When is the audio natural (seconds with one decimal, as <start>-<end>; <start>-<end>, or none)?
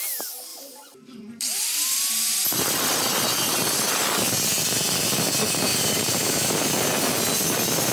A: 0.0-0.5; 2.0-5.7; 6.6-7.9